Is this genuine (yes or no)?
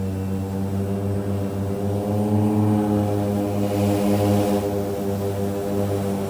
yes